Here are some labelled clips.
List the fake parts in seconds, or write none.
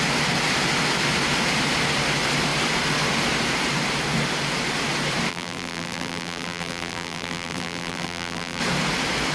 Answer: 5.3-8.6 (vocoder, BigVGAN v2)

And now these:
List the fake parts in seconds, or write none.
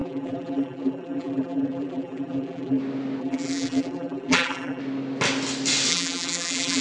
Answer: 0.0-2.8 (vocoder, BigVGAN v2); 3.2-4.8; 5.9-6.8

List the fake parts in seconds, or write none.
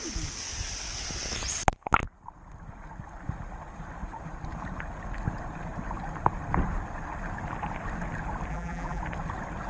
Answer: 8.5-9.0 (vocoder, BigVGAN v2)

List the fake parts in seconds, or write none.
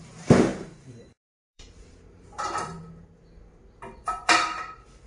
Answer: 0.0-2.8 (vocoder, BigVGAN v2); 4.3-5.1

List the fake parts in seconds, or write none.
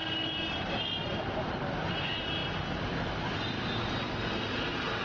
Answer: 0.0-0.7 (vocoder, BigVGAN v2)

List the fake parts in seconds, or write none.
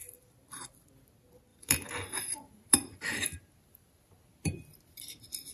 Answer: 0.0-0.9 (vocoder, BigVGAN v2); 1.5-4.8